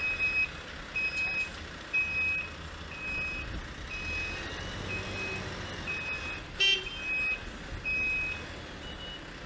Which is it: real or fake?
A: real